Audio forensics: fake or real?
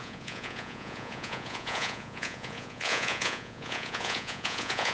fake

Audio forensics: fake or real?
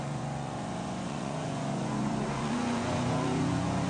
fake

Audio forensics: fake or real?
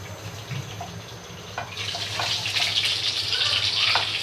real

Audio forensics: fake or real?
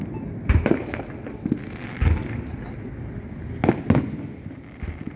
real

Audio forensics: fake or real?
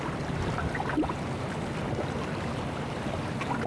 real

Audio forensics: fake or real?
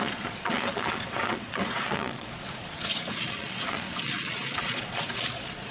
fake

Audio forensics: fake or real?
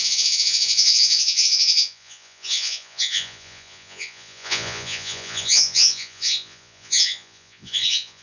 fake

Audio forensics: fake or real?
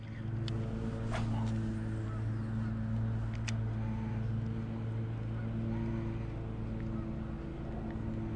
real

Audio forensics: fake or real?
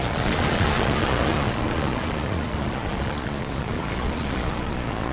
fake